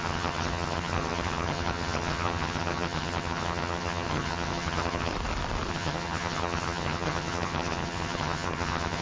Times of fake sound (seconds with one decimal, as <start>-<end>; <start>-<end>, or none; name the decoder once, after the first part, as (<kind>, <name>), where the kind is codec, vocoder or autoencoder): 0.0-5.1 (vocoder, HiFi-GAN); 5.7-9.0